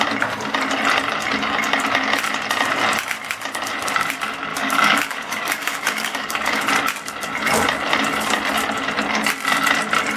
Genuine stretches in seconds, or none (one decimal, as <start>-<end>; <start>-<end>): 0.0-4.5; 6.7-10.2